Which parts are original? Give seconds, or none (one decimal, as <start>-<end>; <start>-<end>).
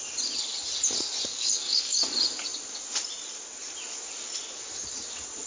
0.0-1.3; 2.1-5.5